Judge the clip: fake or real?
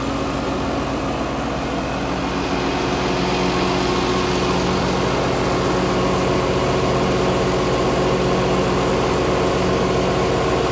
real